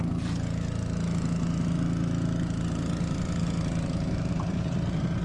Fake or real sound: real